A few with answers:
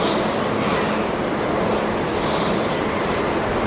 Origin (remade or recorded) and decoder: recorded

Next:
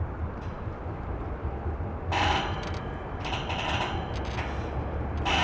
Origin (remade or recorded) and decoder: recorded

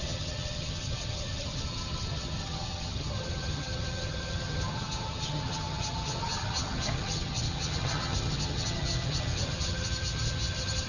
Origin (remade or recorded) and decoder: remade, vocoder, HiFi-GAN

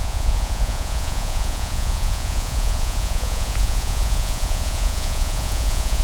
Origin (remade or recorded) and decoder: remade, vocoder, Vocos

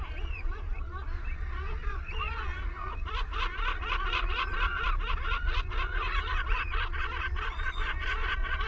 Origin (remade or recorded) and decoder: remade, vocoder, Vocos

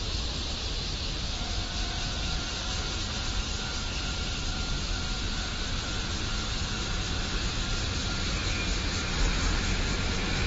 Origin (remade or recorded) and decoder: recorded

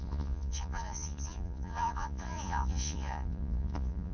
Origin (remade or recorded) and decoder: remade, vocoder, Vocos